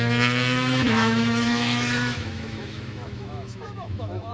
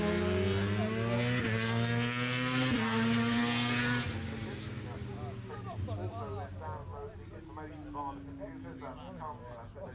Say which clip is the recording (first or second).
second